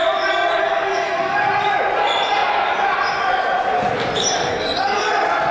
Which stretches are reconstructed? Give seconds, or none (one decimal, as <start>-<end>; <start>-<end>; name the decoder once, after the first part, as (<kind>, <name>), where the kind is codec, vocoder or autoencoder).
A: 0.6-1.5 (codec, SNAC); 4.5-5.1